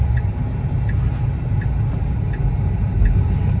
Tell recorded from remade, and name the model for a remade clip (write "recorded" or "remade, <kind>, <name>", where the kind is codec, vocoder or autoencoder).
recorded